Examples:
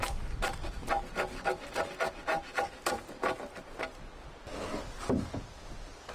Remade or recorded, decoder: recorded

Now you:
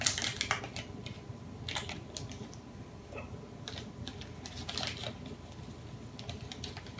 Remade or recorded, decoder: recorded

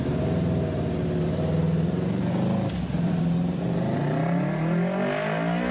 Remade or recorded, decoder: recorded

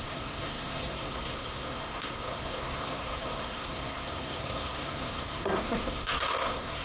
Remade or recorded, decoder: remade, codec, SNAC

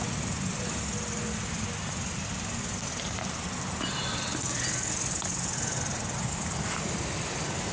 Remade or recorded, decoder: recorded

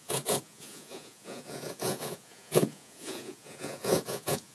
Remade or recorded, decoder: remade, vocoder, Vocos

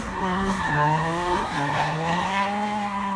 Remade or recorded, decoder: remade, codec, SNAC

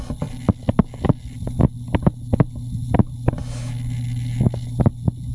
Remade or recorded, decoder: recorded